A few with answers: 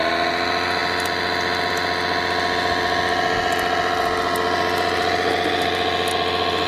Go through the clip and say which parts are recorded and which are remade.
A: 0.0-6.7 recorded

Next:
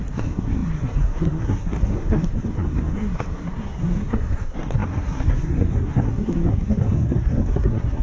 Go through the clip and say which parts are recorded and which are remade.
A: 0.0-8.0 remade

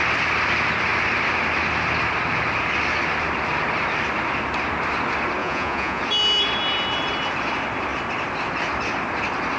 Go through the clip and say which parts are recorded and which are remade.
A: 0.0-5.4 recorded; 5.4-6.0 remade; 6.0-9.6 recorded